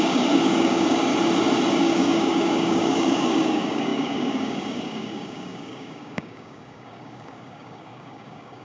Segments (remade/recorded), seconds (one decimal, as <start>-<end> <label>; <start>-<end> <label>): 0.0-1.1 remade; 1.1-1.7 recorded; 1.7-8.6 remade